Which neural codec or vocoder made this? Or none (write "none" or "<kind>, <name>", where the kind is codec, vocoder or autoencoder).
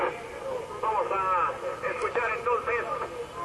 none